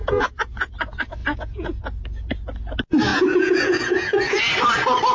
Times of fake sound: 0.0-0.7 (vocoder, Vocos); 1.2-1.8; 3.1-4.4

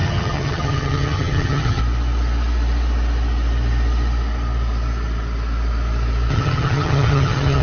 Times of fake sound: 0.0-1.8 (vocoder, HiFi-GAN); 6.3-7.6

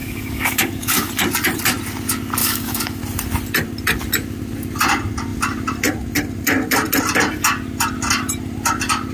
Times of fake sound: 0.0-1.1 (codec, DAC); 2.4-3.0

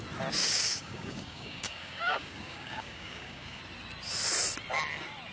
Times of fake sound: 0.4-3.6 (codec, DAC)

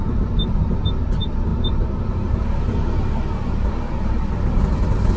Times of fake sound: none

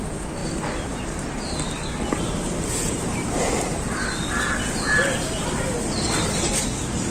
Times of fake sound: none

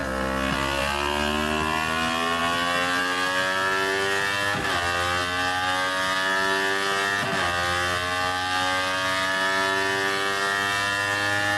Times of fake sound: none